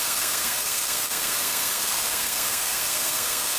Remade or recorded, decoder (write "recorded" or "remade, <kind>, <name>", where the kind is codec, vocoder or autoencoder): remade, codec, SNAC